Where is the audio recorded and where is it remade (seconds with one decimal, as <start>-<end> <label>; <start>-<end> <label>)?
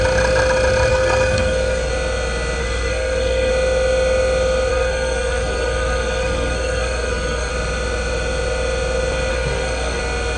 0.0-0.9 recorded; 0.9-1.9 remade; 1.9-2.6 recorded; 2.6-3.5 remade; 3.5-4.7 recorded; 4.7-7.5 remade; 7.5-9.3 recorded; 9.3-10.0 remade; 10.0-10.4 recorded